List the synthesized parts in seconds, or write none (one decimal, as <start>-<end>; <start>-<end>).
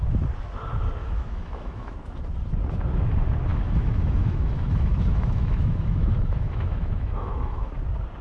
1.0-1.9; 3.5-7.7